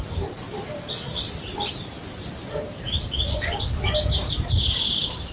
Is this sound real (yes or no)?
yes